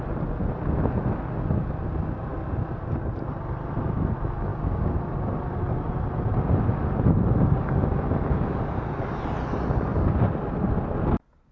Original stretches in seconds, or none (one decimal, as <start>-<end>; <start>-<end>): 0.0-4.5; 5.0-11.5

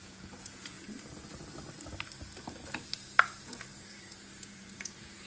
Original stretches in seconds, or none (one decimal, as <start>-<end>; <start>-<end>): 0.8-3.4

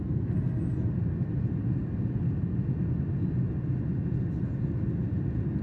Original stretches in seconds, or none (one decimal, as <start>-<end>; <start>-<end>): 0.0-5.6

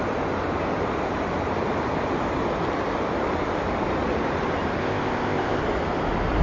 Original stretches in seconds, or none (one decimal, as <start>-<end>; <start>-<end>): 0.0-4.8; 5.6-6.4

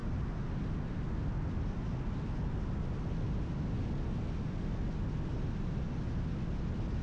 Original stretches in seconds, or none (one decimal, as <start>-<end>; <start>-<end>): 0.0-7.0